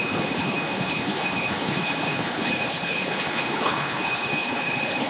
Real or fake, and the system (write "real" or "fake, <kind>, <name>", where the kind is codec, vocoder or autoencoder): fake, codec, HILCodec